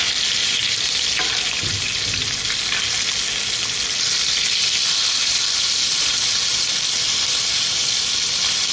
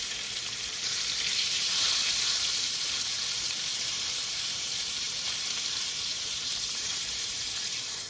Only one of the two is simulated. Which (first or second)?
second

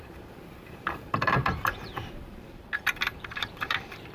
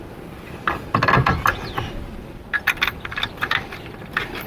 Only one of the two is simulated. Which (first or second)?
first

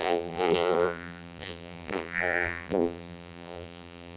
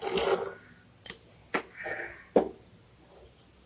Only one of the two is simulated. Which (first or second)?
first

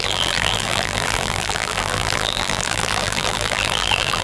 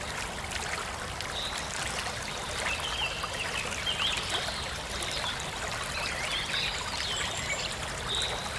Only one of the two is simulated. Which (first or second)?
first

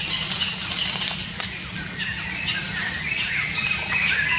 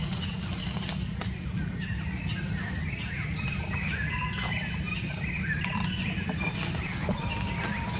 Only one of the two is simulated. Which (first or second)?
second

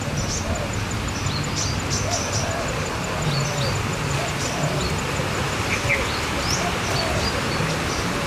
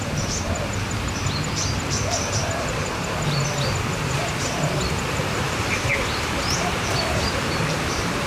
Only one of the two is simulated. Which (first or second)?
second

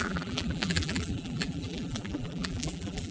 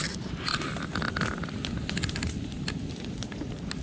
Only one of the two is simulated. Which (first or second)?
first